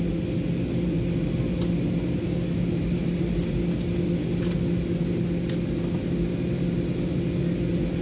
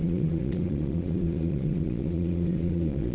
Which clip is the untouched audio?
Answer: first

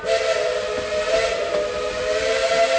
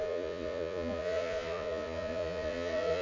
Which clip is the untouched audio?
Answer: first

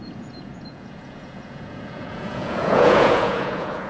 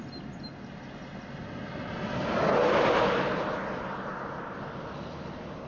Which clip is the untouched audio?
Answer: second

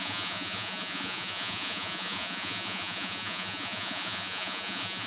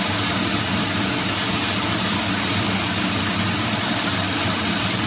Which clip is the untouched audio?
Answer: second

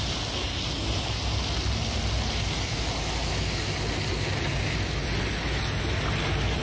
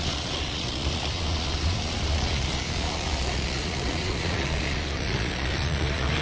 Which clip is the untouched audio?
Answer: first